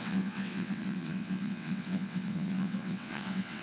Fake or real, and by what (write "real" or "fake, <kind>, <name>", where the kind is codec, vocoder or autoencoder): fake, vocoder, WaveNeXt